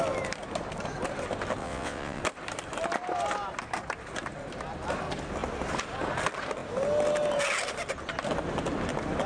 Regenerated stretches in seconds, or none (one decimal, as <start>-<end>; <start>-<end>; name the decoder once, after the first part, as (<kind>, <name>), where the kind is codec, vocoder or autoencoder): 1.6-2.2 (vocoder, WaveNeXt)